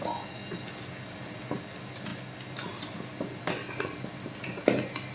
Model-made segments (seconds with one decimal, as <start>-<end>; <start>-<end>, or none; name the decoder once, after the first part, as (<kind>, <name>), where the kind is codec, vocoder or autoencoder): none